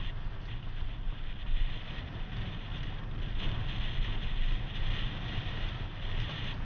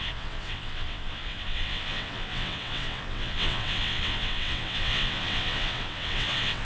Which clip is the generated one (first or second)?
second